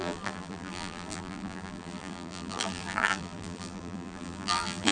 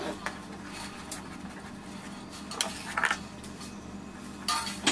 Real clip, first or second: second